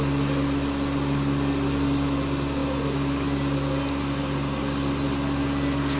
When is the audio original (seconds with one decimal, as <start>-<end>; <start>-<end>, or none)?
0.0-6.0